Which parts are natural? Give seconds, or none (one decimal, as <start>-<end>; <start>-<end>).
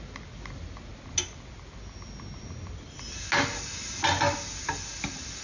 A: 0.0-5.4